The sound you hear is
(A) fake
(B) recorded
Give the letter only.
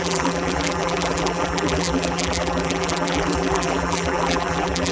A